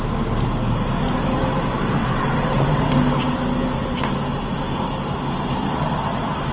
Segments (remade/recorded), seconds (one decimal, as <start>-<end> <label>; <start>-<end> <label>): 0.0-2.0 recorded; 2.0-2.9 remade; 2.9-6.5 recorded